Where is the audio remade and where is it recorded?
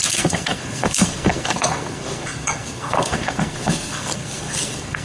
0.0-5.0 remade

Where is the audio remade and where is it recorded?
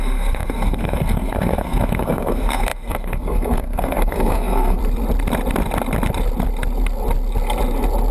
0.0-4.8 remade; 4.8-8.1 recorded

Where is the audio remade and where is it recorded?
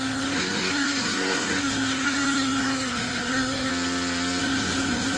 0.0-3.7 remade; 3.7-4.4 recorded; 4.4-5.2 remade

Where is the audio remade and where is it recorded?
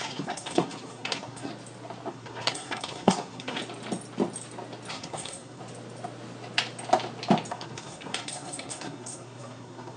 0.0-1.5 remade; 1.5-2.1 recorded; 2.1-3.6 remade; 3.6-4.9 recorded; 4.9-5.6 remade; 5.6-7.5 recorded; 7.5-10.0 remade